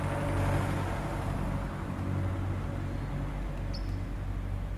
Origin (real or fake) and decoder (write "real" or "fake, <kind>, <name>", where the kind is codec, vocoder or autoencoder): real